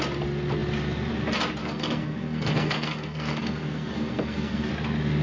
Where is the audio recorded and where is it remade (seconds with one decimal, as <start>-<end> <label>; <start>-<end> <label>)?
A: 0.0-1.6 recorded; 1.6-4.7 remade; 4.7-5.2 recorded